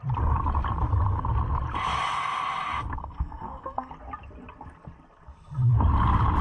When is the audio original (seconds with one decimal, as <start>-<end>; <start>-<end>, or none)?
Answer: 0.0-3.0; 3.9-6.4

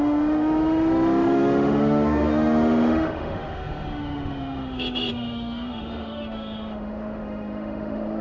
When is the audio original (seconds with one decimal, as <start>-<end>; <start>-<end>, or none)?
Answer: none

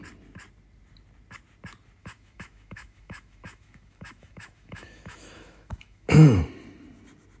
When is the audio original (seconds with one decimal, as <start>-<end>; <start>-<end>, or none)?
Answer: 0.0-2.0; 6.4-7.4

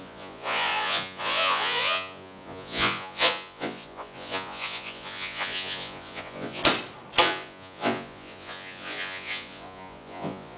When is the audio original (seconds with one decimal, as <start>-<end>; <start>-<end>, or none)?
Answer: 6.6-7.2